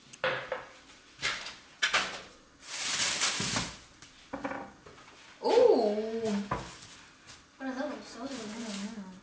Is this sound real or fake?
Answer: real